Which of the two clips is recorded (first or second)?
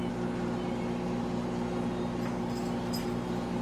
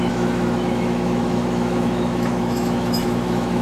first